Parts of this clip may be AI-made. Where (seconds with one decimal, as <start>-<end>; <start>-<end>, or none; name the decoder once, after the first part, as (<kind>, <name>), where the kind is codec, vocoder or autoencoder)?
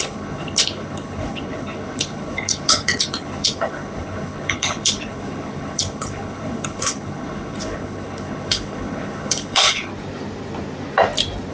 0.0-9.9 (codec, HILCodec)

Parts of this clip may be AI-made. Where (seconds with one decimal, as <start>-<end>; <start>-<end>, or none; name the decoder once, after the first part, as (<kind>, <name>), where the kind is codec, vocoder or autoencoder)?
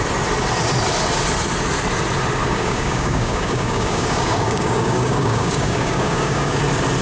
2.4-6.6 (codec, DAC)